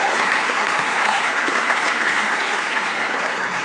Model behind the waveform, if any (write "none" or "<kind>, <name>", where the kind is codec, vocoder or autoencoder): codec, SNAC